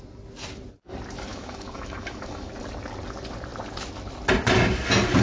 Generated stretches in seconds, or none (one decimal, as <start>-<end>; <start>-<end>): 1.3-2.5

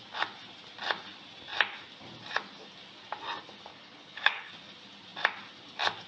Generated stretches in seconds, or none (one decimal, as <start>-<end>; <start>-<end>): 3.7-4.5

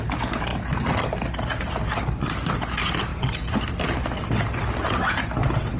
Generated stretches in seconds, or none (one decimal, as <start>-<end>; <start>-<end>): none

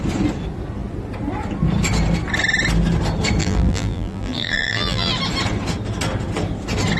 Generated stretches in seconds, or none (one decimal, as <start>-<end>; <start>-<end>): 3.4-5.1

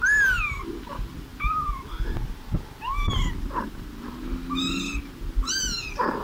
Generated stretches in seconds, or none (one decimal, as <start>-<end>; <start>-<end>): none

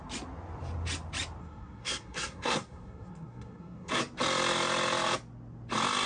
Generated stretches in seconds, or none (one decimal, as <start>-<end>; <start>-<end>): 1.4-4.0